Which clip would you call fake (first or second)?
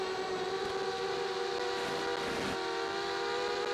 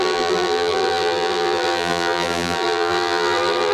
second